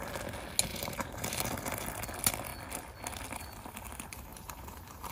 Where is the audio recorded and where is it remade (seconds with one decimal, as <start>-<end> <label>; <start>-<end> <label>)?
0.0-0.7 recorded; 0.7-1.4 remade; 1.4-4.3 recorded; 4.3-5.1 remade